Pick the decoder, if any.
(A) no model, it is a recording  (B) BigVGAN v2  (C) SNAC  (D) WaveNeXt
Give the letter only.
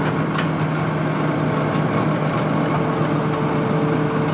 A